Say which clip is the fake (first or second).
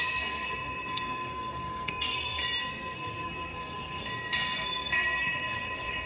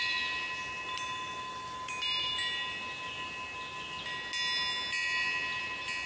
first